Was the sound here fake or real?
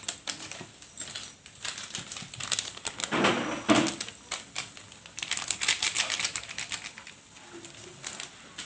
real